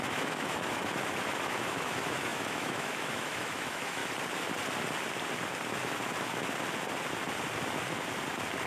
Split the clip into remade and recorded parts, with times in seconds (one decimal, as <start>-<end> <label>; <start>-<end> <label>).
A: 0.0-4.0 remade; 4.0-8.7 recorded